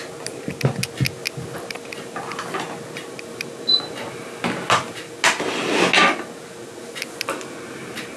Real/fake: real